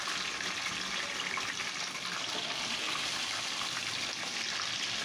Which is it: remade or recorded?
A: recorded